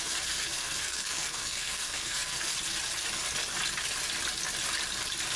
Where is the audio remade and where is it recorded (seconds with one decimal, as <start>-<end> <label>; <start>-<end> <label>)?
0.0-2.5 remade; 2.5-5.4 recorded